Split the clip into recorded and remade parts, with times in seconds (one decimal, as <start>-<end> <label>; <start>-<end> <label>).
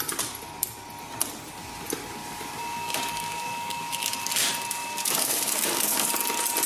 0.0-2.2 recorded; 2.2-4.3 remade; 4.3-4.8 recorded; 4.8-6.1 remade; 6.1-6.7 recorded